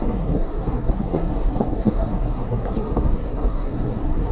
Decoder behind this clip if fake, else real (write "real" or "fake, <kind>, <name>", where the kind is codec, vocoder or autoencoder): fake, codec, SNAC